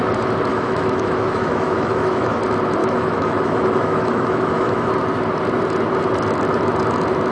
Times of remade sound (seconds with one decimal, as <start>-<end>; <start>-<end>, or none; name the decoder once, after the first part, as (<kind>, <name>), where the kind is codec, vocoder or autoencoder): 0.5-2.4 (autoencoder, DAC-VAE); 2.8-4.9